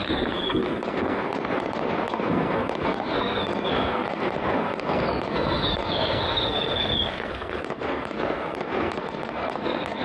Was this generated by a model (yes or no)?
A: yes